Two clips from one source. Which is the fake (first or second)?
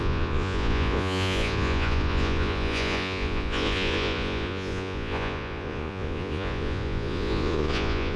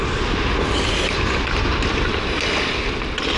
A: first